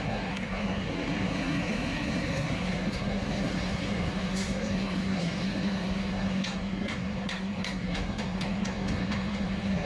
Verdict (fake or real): fake